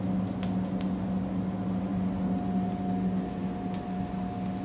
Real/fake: real